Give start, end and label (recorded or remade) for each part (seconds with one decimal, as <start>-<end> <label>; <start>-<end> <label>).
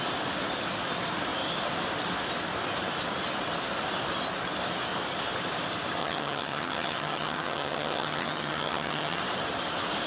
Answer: 0.0-6.0 recorded; 6.0-9.2 remade; 9.2-10.1 recorded